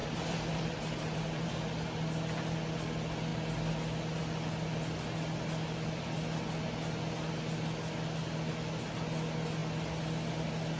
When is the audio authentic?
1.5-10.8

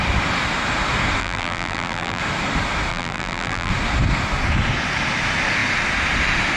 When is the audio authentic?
0.0-1.2; 2.2-2.9; 3.7-6.6

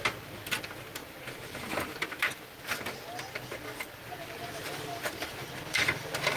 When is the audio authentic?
0.0-6.4

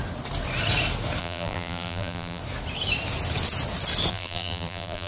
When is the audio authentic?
0.0-1.2; 2.4-4.1

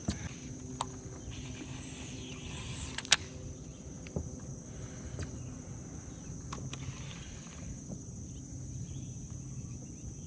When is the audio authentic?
0.0-3.7; 4.4-10.3